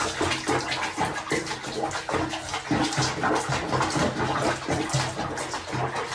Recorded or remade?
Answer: recorded